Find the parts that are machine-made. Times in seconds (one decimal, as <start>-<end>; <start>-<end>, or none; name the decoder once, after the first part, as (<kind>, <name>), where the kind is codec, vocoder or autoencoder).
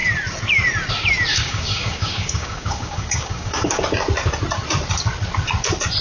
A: 1.3-3.8 (codec, DAC)